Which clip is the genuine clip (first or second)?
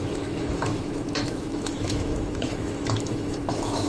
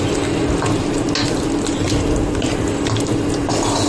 second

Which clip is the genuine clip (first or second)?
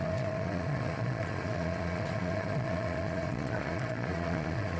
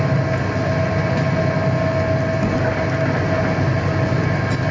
second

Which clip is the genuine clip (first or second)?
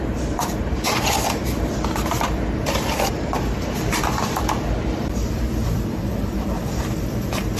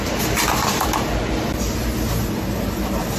second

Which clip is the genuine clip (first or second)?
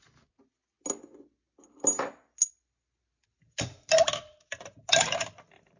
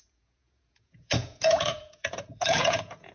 first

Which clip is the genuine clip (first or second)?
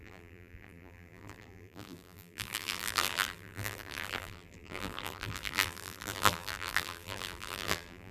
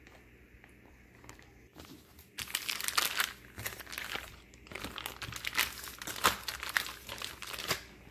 second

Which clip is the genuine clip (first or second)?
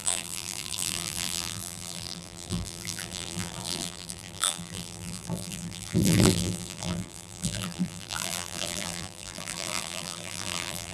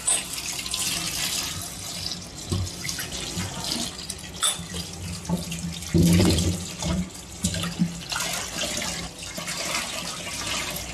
second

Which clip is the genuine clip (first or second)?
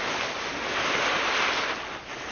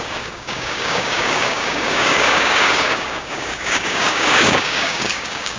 first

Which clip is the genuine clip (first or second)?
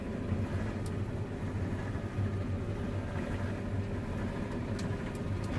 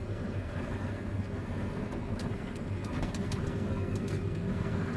first